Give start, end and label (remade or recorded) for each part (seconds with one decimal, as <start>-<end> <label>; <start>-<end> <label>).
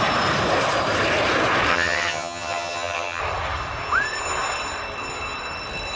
0.0-1.7 recorded; 1.7-3.2 remade; 3.2-6.0 recorded